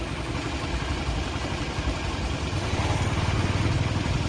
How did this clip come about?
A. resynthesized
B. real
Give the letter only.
B